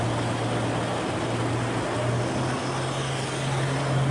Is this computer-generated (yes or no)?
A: no